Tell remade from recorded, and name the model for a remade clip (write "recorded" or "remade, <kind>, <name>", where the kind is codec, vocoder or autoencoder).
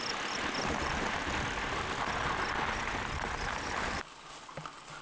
recorded